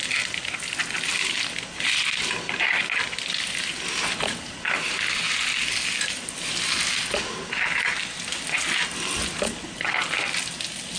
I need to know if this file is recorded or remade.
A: recorded